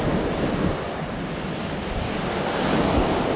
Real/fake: real